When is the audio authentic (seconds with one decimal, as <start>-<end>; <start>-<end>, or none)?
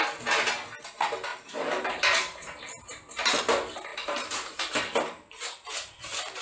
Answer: 0.0-1.3; 3.4-3.9; 4.8-6.4